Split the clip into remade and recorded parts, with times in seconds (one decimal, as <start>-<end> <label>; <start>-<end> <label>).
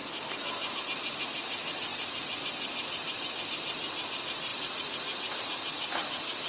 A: 0.0-6.5 recorded